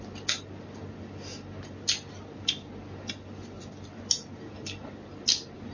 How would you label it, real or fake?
real